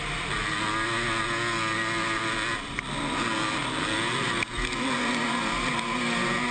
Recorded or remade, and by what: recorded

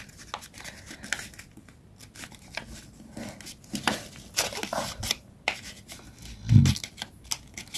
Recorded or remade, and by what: recorded